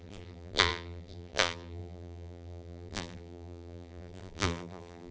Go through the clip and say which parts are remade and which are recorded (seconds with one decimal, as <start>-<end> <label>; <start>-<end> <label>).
0.0-5.1 remade